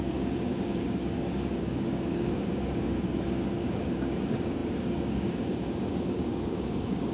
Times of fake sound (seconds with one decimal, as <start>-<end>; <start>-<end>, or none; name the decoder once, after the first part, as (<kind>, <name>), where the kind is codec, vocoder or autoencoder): 0.0-7.1 (codec, DAC)